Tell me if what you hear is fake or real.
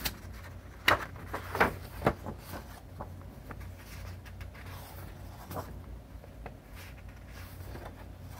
real